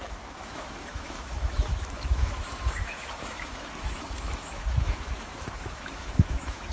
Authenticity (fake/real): fake